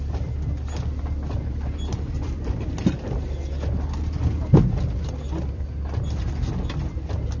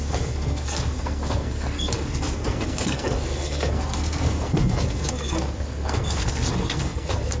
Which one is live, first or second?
first